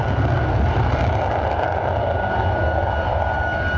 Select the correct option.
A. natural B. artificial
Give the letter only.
A